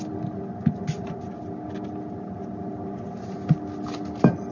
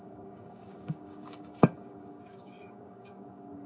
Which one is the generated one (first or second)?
second